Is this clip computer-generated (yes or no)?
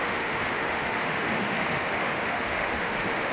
yes